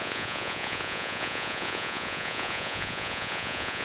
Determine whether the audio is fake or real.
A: fake